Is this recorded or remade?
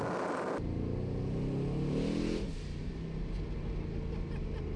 recorded